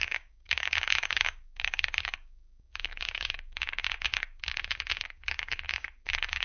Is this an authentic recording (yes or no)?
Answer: no